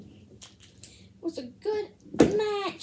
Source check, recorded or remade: recorded